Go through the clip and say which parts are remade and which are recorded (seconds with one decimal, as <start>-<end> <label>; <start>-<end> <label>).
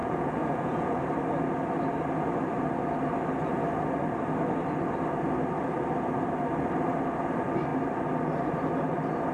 0.0-1.0 remade; 1.0-9.3 recorded